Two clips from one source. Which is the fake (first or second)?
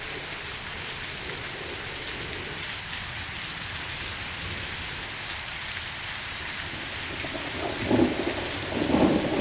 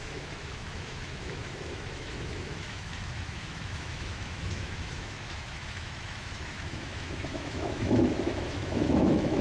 second